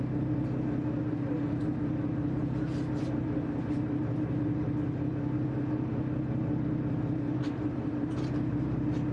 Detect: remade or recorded recorded